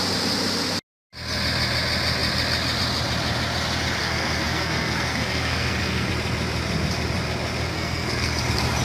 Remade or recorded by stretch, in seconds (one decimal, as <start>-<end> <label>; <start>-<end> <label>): 0.0-4.0 recorded; 4.0-6.1 remade; 6.1-7.7 recorded; 7.7-8.4 remade; 8.4-8.8 recorded